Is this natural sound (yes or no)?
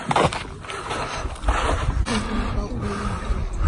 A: yes